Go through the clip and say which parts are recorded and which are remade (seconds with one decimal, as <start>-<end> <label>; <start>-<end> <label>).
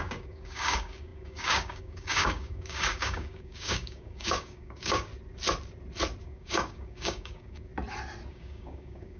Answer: 0.0-5.1 remade; 5.1-6.2 recorded; 6.2-7.7 remade; 7.7-8.3 recorded; 8.3-9.2 remade